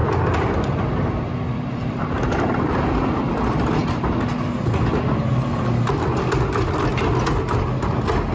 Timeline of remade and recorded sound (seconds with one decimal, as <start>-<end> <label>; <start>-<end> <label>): 0.0-8.3 recorded